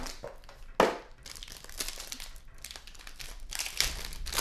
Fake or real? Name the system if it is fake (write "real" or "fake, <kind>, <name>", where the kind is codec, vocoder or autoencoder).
real